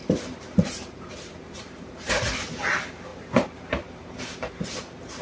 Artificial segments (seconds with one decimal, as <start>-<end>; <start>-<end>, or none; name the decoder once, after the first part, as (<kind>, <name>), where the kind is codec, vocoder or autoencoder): 0.0-2.1 (vocoder, BigVGAN v2); 3.1-4.1